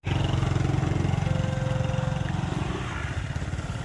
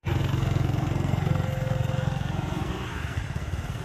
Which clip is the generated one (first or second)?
second